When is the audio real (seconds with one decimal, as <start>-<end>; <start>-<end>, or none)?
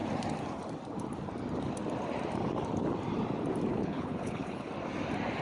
0.0-3.7; 4.7-5.4